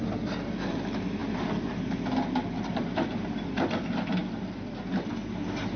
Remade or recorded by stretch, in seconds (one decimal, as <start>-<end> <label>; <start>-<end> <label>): 0.0-5.8 recorded